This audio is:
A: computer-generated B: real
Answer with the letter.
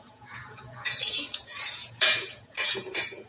A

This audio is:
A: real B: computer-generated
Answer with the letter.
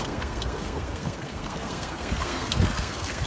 B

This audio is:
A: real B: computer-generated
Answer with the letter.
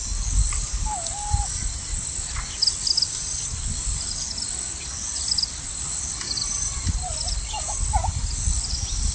A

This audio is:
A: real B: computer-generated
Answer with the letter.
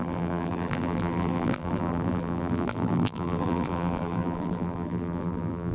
B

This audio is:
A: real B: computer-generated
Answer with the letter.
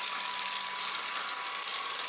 A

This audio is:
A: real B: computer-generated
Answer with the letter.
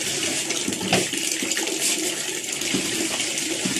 A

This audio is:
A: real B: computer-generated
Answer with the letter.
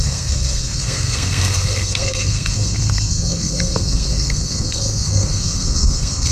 B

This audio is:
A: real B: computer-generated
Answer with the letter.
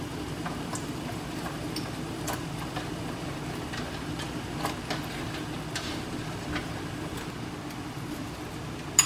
A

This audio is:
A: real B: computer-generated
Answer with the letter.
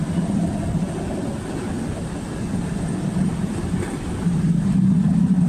A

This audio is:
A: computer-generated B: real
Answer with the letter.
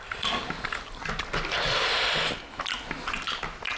B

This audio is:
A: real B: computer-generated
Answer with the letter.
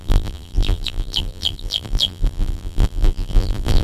B